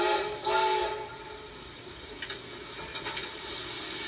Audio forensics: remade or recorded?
recorded